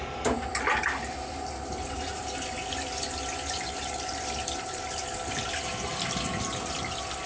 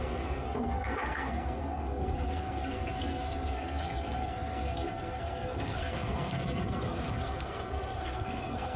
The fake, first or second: second